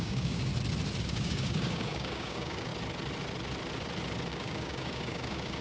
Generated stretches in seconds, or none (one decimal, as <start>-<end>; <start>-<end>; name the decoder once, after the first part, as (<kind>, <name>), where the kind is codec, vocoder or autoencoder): 0.0-0.5 (codec, DAC); 1.0-2.7; 4.3-5.6